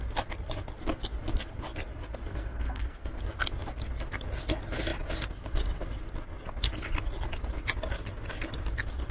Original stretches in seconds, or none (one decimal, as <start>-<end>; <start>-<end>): 0.0-2.3; 3.2-9.1